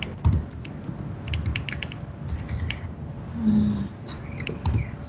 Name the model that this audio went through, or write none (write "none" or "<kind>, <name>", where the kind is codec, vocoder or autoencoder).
none